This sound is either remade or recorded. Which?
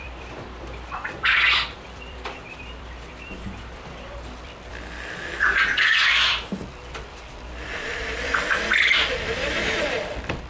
remade